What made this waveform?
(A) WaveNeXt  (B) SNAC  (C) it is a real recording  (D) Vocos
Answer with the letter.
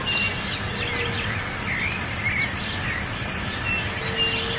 C